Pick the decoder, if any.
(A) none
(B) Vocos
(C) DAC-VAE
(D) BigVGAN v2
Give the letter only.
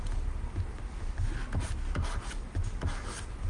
A